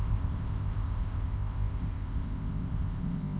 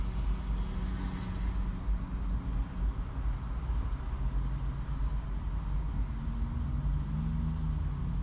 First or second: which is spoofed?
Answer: first